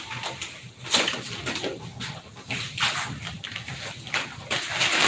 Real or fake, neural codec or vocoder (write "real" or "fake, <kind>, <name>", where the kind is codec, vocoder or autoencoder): real